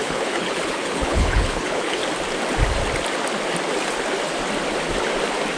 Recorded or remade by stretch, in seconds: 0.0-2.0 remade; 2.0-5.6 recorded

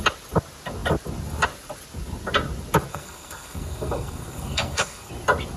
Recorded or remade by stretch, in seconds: 0.0-2.9 recorded; 2.9-5.1 remade; 5.1-5.6 recorded

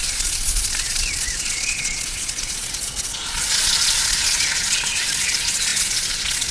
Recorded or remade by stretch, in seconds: 0.0-6.5 remade

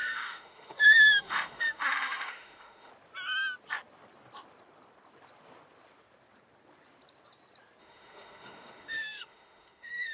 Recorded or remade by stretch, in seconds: 0.0-2.9 remade; 2.9-7.8 recorded; 7.8-10.1 remade

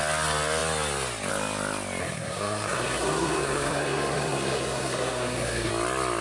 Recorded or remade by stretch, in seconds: 0.0-2.0 recorded; 2.0-5.7 remade; 5.7-6.2 recorded

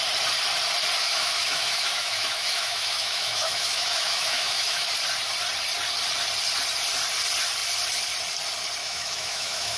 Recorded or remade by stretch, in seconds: 0.0-1.0 recorded; 1.0-4.9 remade; 4.9-8.8 recorded; 8.8-9.8 remade

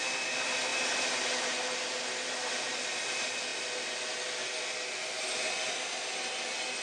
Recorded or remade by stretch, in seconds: 0.0-6.8 recorded